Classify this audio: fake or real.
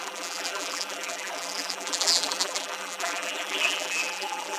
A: fake